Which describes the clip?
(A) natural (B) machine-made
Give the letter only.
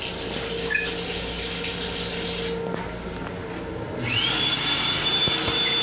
A